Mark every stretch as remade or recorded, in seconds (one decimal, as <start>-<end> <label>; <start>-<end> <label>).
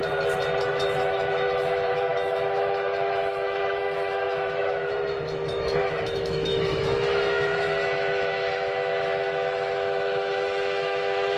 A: 0.0-0.6 recorded; 0.6-11.4 remade